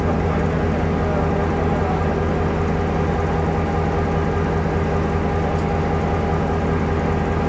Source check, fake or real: real